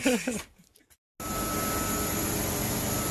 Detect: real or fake real